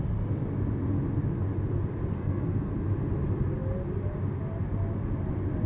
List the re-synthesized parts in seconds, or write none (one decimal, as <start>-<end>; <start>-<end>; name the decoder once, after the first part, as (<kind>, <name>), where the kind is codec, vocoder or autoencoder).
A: 2.1-2.7 (codec, SNAC)